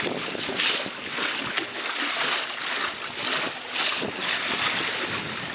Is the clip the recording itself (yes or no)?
yes